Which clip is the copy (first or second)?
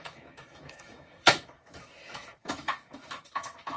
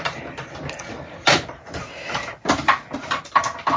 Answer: first